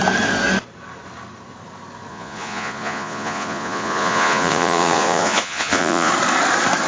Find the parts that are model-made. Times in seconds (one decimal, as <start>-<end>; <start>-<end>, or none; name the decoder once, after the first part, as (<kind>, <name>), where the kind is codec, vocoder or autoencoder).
2.1-6.1 (vocoder, Vocos)